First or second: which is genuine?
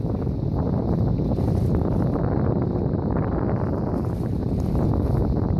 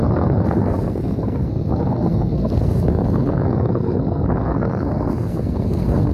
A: first